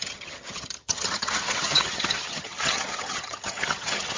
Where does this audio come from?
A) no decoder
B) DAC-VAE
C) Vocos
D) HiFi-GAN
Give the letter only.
D